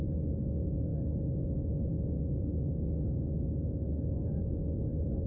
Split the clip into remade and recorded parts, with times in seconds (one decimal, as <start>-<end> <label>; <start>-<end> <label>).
0.0-0.9 recorded; 0.9-4.1 remade; 4.1-5.3 recorded